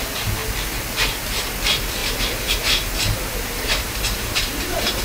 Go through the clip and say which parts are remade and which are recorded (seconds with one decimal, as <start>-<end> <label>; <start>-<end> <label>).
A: 0.0-2.0 recorded; 2.0-5.0 remade